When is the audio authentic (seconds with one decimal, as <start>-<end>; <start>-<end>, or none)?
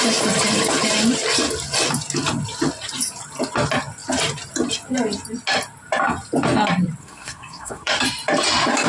0.0-7.0; 8.0-8.9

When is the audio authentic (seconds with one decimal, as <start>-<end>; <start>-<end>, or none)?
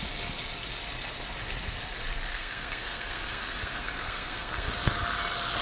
0.0-2.3; 4.7-5.6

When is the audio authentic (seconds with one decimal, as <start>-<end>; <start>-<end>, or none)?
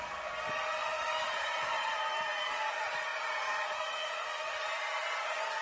0.0-0.9; 2.0-5.6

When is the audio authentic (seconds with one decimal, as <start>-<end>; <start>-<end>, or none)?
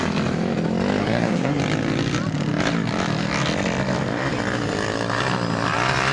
0.0-1.0; 1.6-6.1